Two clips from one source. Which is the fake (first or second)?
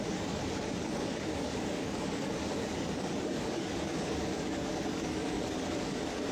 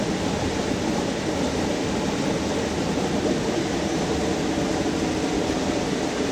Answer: first